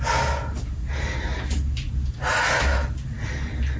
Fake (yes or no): no